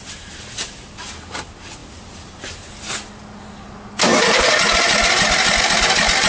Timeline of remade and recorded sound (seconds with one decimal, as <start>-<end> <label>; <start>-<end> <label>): 0.0-6.3 recorded